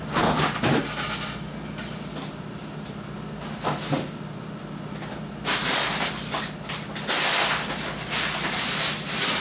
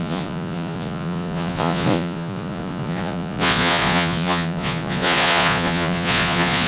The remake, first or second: second